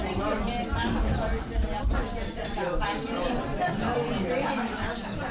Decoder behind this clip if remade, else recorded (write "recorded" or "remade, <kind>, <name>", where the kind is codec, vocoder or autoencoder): recorded